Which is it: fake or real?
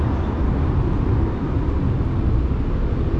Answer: real